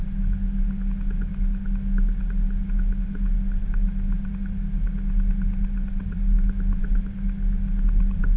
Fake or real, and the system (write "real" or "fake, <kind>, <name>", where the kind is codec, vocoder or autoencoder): real